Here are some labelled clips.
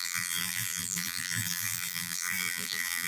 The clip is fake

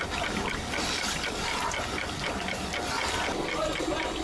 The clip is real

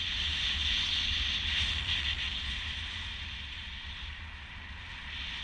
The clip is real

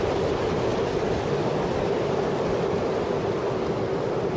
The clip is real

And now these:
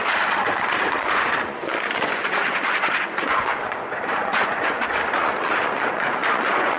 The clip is fake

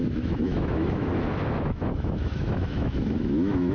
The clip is fake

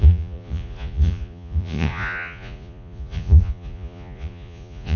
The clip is fake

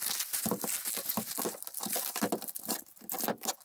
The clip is real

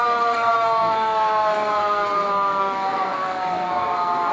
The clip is fake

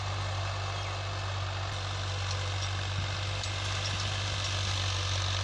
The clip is real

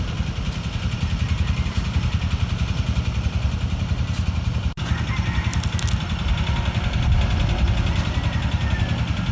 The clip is real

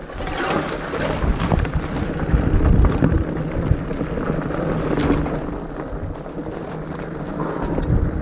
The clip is real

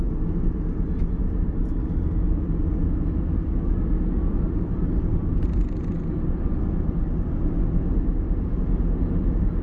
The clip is real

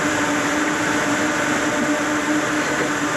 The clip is real